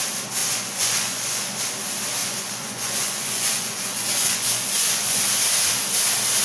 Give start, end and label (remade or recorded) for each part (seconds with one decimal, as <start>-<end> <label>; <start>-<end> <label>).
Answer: 0.0-0.4 recorded; 0.4-1.6 remade; 1.6-2.2 recorded; 2.2-5.2 remade; 5.2-6.4 recorded